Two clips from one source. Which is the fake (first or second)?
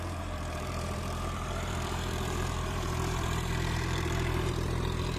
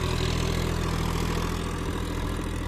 first